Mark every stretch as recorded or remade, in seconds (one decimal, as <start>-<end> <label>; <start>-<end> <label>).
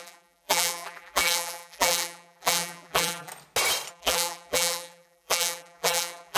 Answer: 0.0-3.3 remade; 3.3-3.9 recorded; 3.9-6.4 remade